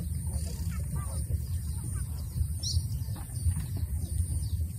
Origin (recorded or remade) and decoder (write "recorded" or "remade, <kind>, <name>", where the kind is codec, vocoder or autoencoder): recorded